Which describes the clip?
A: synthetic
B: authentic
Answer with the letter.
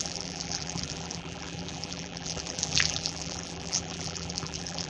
A